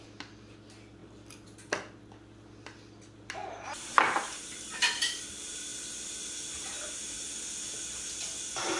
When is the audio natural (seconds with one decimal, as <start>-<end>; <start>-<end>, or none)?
0.0-3.4; 4.4-8.8